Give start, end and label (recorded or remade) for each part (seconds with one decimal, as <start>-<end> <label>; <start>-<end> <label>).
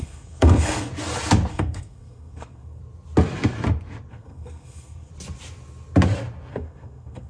0.0-0.9 remade; 0.9-1.5 recorded; 1.5-2.8 remade; 2.8-4.1 recorded; 4.1-5.1 remade; 5.1-6.5 recorded; 6.5-7.3 remade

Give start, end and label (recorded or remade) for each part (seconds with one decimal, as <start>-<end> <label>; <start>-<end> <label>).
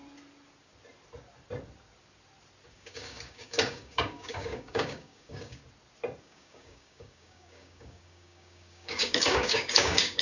0.0-2.7 recorded; 2.7-5.6 remade; 5.6-6.2 recorded; 6.2-10.2 remade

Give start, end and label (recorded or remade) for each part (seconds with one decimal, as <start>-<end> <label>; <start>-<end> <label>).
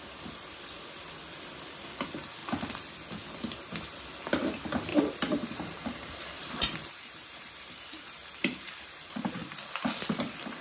0.0-4.9 recorded; 4.9-9.3 remade; 9.3-10.6 recorded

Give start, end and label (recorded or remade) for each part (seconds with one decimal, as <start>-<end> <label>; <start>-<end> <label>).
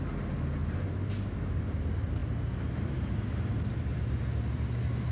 0.0-5.1 recorded